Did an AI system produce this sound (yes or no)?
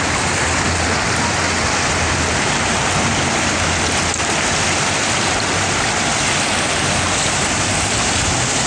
no